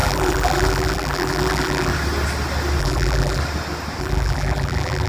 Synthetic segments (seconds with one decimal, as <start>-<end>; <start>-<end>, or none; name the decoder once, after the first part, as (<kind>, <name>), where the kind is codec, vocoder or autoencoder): 0.0-1.9 (vocoder, BigVGAN v2); 2.8-3.4; 4.0-5.1

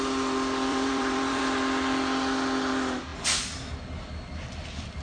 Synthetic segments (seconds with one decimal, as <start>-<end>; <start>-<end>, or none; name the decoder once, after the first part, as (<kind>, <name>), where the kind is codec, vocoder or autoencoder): 0.7-1.4 (vocoder, BigVGAN v2)

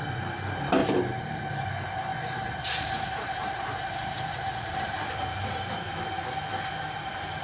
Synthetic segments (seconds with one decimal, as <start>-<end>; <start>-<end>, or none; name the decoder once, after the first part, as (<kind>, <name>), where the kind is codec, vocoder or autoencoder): 2.1-5.7 (vocoder, BigVGAN v2)

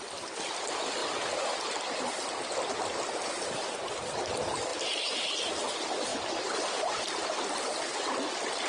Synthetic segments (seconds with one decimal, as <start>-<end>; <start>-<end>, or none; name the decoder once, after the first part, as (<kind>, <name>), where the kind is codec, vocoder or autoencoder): 1.0-2.1 (vocoder, BigVGAN v2); 4.7-5.6; 6.1-7.0

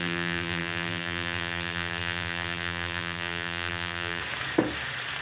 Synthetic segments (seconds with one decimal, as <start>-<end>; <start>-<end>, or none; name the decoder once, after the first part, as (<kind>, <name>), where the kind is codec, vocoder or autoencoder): 0.0-4.2 (vocoder, BigVGAN v2)